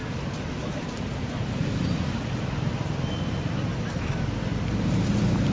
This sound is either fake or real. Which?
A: real